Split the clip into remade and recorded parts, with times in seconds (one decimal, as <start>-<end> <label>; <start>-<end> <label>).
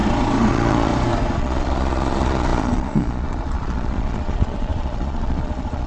0.0-0.5 recorded; 0.5-0.9 remade; 0.9-1.4 recorded; 1.4-5.9 remade